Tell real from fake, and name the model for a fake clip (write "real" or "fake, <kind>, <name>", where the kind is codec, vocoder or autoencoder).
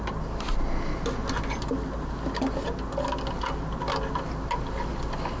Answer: real